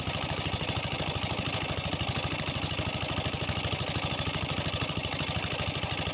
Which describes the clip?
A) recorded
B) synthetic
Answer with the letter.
B